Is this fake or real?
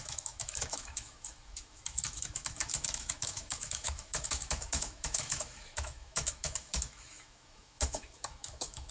fake